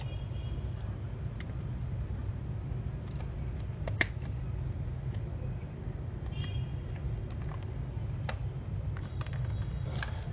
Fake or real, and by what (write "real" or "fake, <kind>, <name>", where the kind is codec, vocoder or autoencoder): real